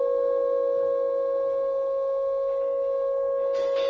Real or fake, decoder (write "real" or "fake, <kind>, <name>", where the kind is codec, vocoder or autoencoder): real